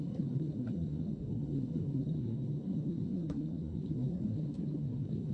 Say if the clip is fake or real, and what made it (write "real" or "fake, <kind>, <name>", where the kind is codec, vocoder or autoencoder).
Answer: fake, codec, SNAC